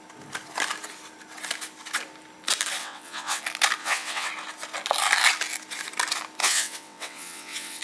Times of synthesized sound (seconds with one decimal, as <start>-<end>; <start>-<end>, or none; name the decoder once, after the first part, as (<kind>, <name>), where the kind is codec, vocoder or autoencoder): 2.8-3.4 (vocoder, WaveNeXt); 3.8-4.3; 6.4-7.8